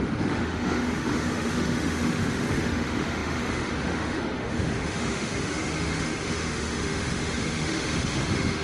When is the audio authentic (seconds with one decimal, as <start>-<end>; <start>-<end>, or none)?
none